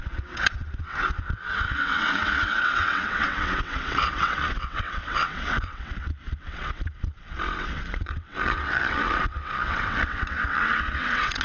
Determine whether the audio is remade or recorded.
remade